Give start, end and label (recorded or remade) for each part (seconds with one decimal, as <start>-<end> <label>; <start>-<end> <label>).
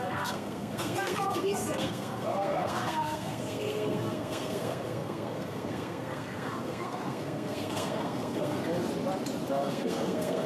0.0-8.6 remade; 8.6-9.5 recorded; 9.5-10.5 remade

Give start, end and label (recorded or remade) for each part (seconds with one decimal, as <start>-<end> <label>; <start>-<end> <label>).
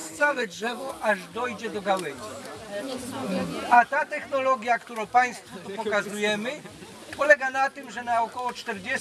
0.0-0.9 remade; 0.9-9.0 recorded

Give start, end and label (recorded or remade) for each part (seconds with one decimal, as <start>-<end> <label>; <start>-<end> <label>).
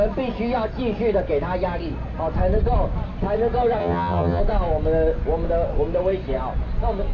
0.0-3.8 recorded; 3.8-4.4 remade; 4.4-7.1 recorded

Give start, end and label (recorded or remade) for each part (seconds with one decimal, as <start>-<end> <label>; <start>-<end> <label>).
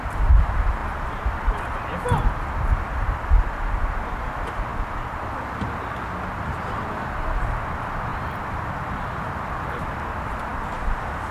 0.0-4.7 recorded; 4.7-5.3 remade; 5.3-10.5 recorded; 10.5-11.3 remade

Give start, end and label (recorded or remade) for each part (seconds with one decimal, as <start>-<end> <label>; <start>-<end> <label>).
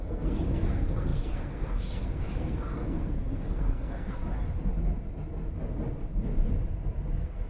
0.0-4.2 remade; 4.2-7.1 recorded; 7.1-7.5 remade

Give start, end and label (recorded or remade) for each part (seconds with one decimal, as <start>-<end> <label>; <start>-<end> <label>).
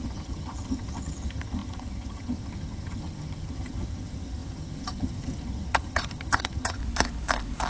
0.0-6.8 remade; 6.8-7.7 recorded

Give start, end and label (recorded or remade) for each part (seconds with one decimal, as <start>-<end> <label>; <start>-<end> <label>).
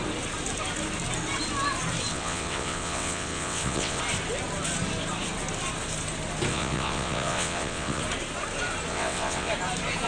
0.0-2.1 recorded; 2.1-4.0 remade; 4.0-6.5 recorded; 6.5-8.0 remade; 8.0-8.9 recorded; 8.9-9.5 remade; 9.5-10.1 recorded